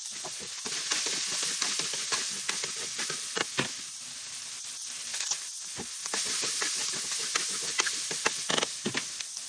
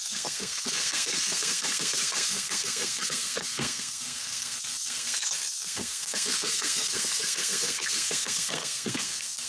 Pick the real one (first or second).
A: first